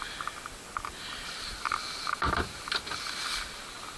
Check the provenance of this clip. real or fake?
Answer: real